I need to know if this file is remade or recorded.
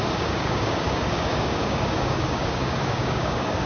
remade